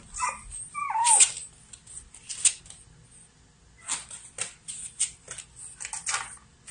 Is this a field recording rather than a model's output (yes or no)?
yes